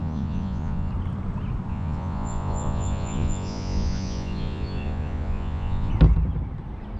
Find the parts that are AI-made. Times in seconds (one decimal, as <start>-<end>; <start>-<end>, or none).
0.0-0.9; 1.7-5.9